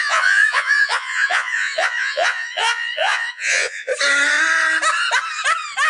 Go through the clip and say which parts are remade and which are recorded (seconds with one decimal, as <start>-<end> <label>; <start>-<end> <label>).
0.0-3.9 remade; 3.9-5.9 recorded